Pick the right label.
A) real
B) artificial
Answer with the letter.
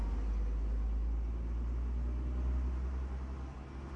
A